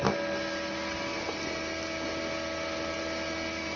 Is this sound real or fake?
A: real